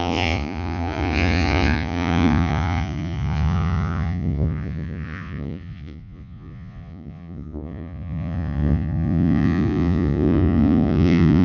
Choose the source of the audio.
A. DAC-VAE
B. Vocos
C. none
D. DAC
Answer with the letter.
B